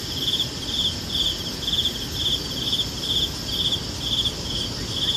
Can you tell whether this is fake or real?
real